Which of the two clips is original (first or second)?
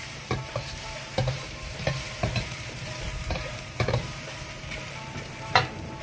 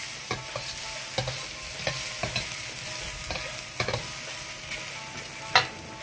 second